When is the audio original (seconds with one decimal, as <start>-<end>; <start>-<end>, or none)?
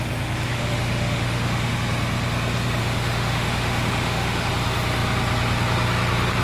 0.0-0.5; 1.7-2.8; 4.5-6.4